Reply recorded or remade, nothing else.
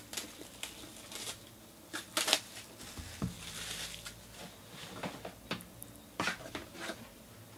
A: recorded